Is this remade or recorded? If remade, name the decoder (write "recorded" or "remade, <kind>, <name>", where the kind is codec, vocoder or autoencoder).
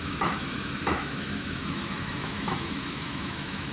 remade, autoencoder, DAC-VAE